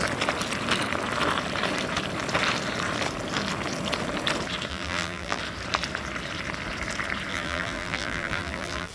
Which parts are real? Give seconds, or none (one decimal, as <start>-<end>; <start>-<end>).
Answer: 0.0-4.7; 5.4-7.3